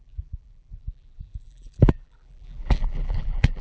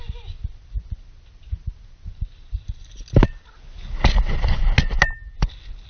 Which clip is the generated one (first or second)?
first